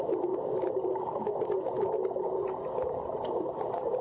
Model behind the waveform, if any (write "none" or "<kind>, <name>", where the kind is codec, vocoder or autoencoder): none